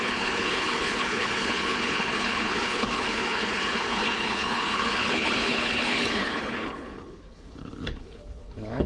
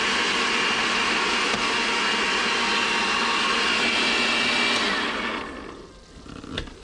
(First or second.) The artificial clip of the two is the first